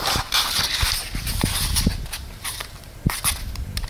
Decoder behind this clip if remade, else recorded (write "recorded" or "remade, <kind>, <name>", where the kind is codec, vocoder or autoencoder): recorded